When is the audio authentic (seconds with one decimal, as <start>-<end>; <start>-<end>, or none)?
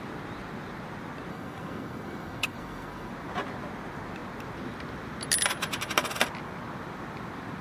0.0-1.3; 3.1-7.6